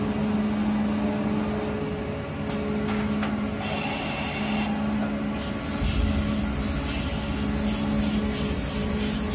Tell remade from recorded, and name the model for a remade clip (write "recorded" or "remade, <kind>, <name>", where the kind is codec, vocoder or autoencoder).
recorded